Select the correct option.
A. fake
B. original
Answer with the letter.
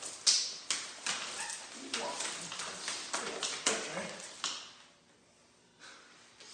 B